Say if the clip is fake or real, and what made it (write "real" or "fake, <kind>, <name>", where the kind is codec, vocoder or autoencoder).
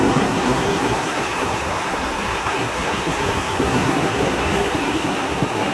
fake, codec, SNAC